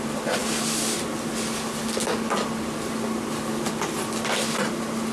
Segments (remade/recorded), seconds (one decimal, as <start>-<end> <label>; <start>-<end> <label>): 0.0-5.1 recorded